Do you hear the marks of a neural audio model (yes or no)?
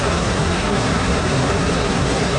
yes